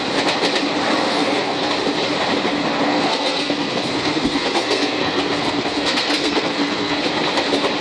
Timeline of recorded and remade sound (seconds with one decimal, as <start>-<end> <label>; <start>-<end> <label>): 0.0-1.1 recorded; 1.1-1.7 remade; 1.7-2.9 recorded; 2.9-7.0 remade; 7.0-7.8 recorded